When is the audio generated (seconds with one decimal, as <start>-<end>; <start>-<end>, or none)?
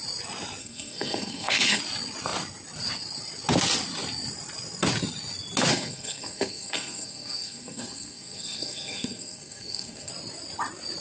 0.6-1.8; 5.7-10.1